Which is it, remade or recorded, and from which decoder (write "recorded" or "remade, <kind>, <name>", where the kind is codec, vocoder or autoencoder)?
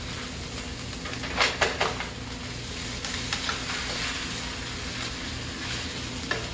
recorded